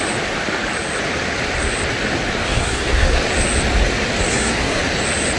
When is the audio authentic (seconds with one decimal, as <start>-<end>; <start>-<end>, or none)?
0.0-2.4; 3.2-4.3; 4.8-5.4